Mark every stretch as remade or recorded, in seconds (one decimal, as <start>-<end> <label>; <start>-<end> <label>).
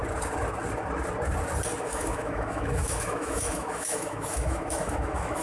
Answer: 0.0-1.8 recorded; 1.8-5.4 remade